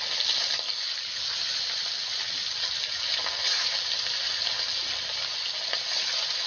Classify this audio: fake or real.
real